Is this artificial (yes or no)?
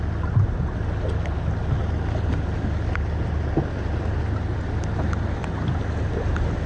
no